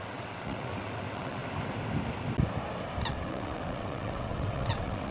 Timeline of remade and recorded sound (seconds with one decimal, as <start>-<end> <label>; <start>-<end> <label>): 0.0-1.4 remade; 1.4-3.1 recorded; 3.1-5.1 remade